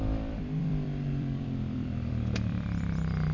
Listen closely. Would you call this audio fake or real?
fake